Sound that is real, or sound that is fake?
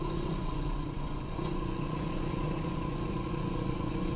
fake